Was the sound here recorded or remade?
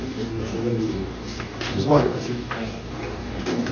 remade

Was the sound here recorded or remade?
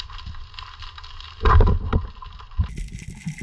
recorded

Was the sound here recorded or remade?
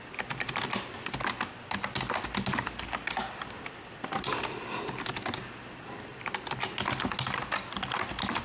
recorded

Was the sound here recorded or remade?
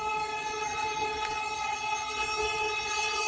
remade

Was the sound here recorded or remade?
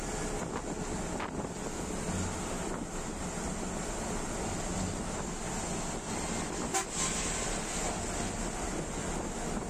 recorded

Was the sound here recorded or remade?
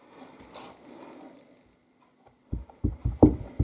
recorded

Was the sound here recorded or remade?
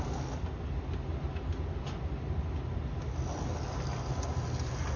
recorded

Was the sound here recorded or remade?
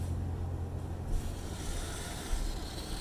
recorded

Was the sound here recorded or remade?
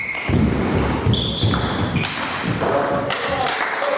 recorded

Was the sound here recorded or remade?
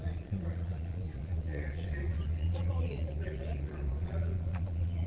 remade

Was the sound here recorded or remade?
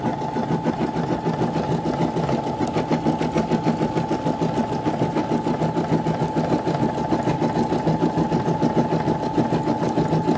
recorded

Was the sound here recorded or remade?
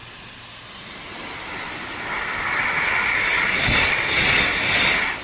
recorded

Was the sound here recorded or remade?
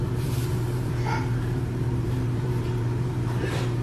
remade